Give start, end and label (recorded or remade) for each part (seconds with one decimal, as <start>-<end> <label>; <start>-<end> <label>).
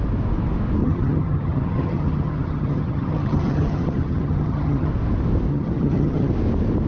0.0-0.8 recorded; 0.8-4.9 remade; 4.9-5.5 recorded; 5.5-6.3 remade; 6.3-6.9 recorded